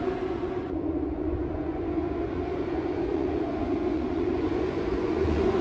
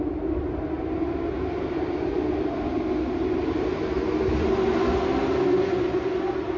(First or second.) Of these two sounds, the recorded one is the second